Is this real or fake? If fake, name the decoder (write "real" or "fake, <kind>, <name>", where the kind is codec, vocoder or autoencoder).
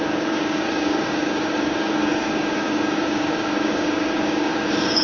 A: fake, codec, DAC